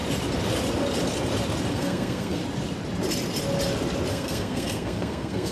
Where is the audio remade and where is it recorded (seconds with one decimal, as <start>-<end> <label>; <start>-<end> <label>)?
0.0-1.7 recorded; 1.7-2.4 remade; 2.4-4.1 recorded; 4.1-5.5 remade